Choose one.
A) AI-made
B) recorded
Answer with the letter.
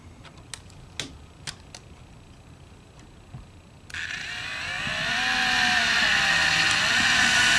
B